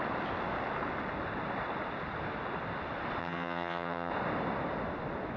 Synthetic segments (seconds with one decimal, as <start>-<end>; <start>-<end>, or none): 3.2-4.1